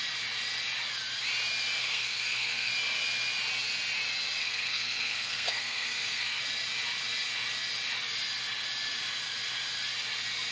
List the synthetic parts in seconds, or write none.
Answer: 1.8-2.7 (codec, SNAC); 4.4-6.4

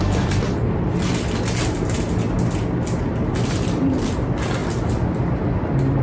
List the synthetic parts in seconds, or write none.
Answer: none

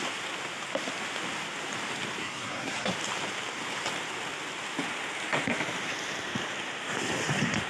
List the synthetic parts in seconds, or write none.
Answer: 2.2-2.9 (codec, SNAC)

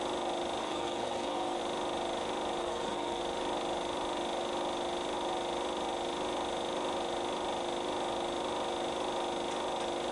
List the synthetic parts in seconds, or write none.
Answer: 0.6-1.6 (codec, SNAC); 2.6-3.2

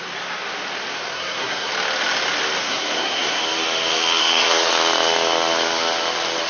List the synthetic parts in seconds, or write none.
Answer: 1.1-1.7 (codec, SNAC); 2.6-3.4; 4.2-4.7

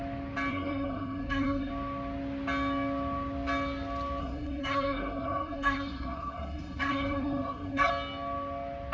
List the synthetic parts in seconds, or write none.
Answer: 0.5-1.7 (codec, SNAC); 4.2-7.9

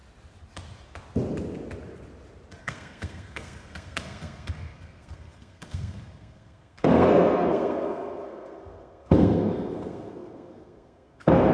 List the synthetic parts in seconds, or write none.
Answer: 2.6-11.5 (codec, SNAC)

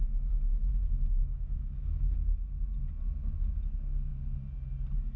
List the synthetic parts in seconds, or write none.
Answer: 0.7-2.0 (codec, SNAC)